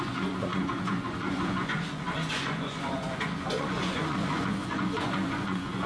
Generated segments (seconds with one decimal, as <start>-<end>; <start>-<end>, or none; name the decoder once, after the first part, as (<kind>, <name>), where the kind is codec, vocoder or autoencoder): 0.0-5.9 (vocoder, Vocos)